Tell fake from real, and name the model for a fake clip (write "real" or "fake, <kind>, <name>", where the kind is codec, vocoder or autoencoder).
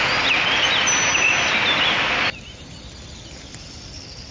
real